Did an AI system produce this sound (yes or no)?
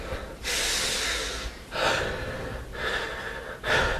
no